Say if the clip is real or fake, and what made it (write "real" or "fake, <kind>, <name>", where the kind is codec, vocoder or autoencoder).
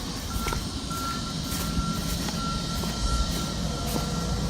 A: real